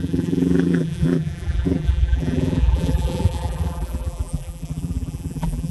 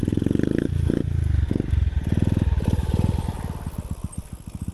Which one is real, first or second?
second